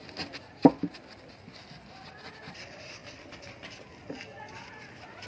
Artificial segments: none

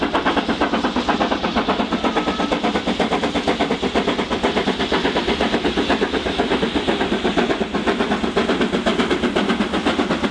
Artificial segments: none

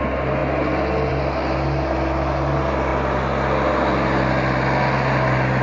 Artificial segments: none

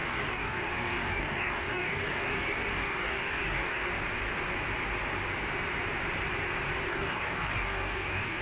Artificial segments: 0.0-3.9 (codec, DAC); 6.9-8.4

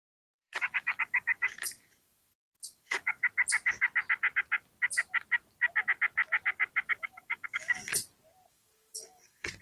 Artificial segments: 0.0-3.2 (codec, DAC); 6.9-7.9; 8.5-9.6

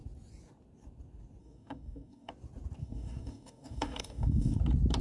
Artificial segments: 1.4-2.3 (codec, DAC); 2.8-4.6

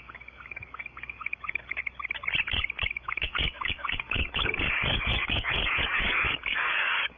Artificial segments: 0.0-1.8 (codec, DAC); 2.9-7.2

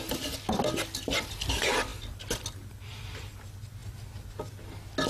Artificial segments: none